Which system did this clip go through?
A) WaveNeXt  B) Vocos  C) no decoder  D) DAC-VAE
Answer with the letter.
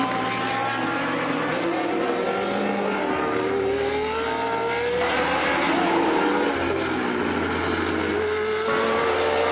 C